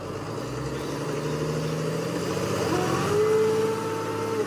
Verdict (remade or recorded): recorded